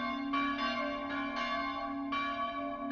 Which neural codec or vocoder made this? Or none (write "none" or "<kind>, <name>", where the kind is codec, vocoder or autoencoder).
none